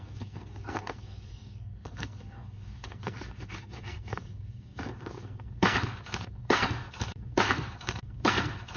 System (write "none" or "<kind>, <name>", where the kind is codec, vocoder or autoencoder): codec, SNAC